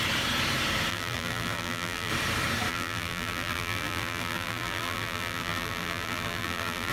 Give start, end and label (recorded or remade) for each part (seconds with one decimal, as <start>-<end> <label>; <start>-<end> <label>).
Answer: 0.0-0.9 recorded; 0.9-2.1 remade; 2.1-2.7 recorded; 2.7-6.9 remade

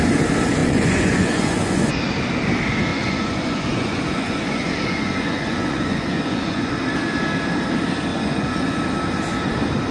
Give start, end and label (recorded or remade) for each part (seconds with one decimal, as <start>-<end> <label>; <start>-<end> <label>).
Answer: 0.0-0.6 recorded; 0.6-1.9 remade; 1.9-2.9 recorded; 2.9-6.7 remade; 6.7-8.1 recorded; 8.1-8.8 remade; 8.8-9.9 recorded

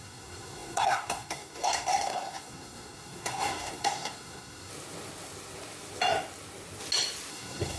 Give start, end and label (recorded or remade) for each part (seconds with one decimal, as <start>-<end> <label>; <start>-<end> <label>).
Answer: 0.0-4.7 remade; 4.7-7.3 recorded; 7.3-7.8 remade